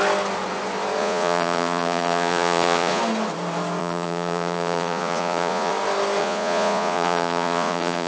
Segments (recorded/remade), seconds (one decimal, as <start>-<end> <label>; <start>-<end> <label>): 0.0-1.0 recorded; 1.0-3.0 remade; 3.0-3.8 recorded; 3.8-5.7 remade; 5.7-6.2 recorded; 6.2-8.1 remade